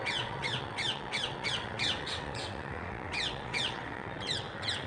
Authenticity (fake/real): fake